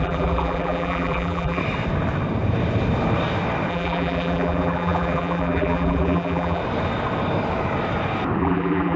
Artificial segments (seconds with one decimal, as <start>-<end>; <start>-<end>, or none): 0.0-1.6; 3.7-6.6; 8.4-9.0